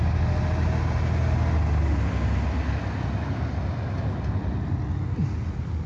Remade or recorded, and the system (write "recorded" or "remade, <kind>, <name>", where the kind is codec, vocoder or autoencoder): recorded